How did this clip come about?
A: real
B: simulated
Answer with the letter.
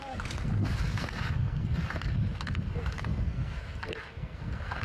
B